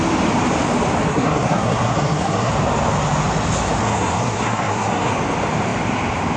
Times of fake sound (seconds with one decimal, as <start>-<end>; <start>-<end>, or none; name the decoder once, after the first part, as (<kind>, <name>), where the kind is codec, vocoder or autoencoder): 1.1-2.5 (codec, SNAC); 3.8-5.1